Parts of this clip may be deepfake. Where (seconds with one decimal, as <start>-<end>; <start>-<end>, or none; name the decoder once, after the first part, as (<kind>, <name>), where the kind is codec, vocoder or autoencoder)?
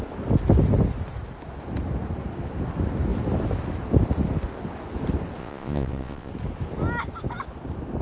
5.4-6.3 (vocoder, Vocos)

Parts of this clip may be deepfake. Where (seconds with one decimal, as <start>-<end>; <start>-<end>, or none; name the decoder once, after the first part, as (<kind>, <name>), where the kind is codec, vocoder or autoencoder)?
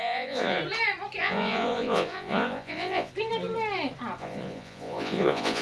0.0-0.6 (vocoder, Vocos); 1.2-3.1; 4.2-5.6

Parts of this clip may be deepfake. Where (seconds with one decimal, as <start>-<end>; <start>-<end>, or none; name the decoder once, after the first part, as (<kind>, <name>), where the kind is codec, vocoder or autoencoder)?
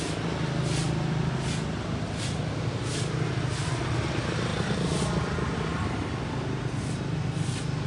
none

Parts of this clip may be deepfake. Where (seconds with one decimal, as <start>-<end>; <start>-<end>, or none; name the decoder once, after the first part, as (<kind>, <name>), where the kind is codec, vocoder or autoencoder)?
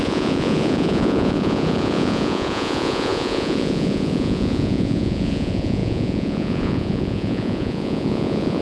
0.0-8.6 (vocoder, Vocos)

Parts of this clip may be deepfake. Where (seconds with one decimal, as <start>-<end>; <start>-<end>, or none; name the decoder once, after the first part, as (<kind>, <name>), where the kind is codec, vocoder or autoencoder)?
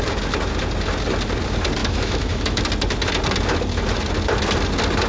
1.8-2.6 (autoencoder, DAC-VAE)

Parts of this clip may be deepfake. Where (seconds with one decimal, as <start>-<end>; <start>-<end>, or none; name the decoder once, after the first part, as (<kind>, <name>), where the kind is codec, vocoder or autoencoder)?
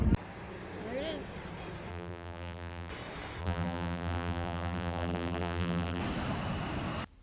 1.9-2.9 (vocoder, BigVGAN v2); 3.4-6.0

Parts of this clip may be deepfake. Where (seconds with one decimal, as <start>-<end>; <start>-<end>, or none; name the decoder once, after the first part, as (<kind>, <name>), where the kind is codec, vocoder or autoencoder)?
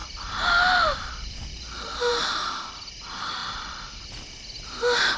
0.0-2.3 (vocoder, BigVGAN v2); 3.4-4.0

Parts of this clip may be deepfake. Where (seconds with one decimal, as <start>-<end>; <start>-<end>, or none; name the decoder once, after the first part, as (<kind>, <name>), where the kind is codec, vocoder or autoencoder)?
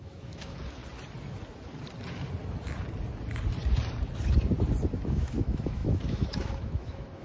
0.0-0.8 (autoencoder, DAC-VAE); 5.1-7.2